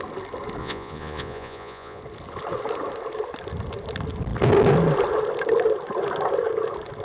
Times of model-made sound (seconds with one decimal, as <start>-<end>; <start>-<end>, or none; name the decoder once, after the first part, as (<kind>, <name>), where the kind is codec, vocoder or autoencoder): 0.6-2.0 (vocoder, Vocos)